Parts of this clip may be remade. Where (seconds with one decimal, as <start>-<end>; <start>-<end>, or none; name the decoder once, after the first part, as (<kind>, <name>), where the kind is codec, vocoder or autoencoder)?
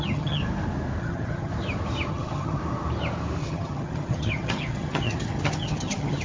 0.0-0.4 (vocoder, HiFi-GAN); 1.0-1.5; 2.1-2.6; 3.4-6.2